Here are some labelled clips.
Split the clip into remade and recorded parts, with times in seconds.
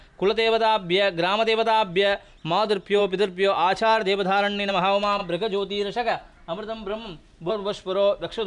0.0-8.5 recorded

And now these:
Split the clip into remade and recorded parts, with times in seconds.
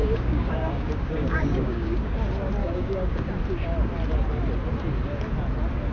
0.0-2.1 remade; 2.1-2.6 recorded; 2.6-3.2 remade; 3.2-5.9 recorded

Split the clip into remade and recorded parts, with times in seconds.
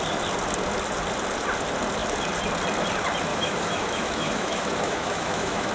0.0-3.3 recorded; 3.3-5.7 remade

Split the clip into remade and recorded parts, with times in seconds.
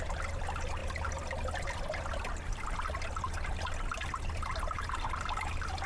0.0-0.8 remade; 0.8-4.3 recorded; 4.3-5.9 remade